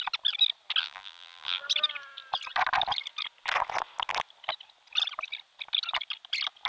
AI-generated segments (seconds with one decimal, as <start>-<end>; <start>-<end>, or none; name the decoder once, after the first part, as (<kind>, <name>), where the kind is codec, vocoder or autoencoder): 0.8-1.6 (vocoder, BigVGAN v2)